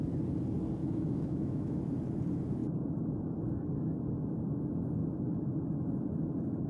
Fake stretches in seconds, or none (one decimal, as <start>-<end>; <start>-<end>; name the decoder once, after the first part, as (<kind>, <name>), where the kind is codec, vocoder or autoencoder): 0.8-1.8 (autoencoder, DAC-VAE)